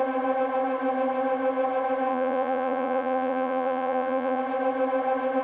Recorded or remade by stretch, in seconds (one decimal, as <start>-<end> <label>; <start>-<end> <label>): 0.0-2.1 recorded; 2.1-4.4 remade; 4.4-5.4 recorded